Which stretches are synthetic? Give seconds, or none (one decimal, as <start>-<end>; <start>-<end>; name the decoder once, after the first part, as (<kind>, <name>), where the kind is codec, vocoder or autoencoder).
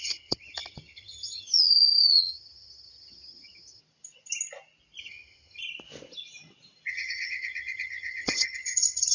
0.0-3.8 (vocoder, HiFi-GAN); 5.0-5.6; 6.9-9.1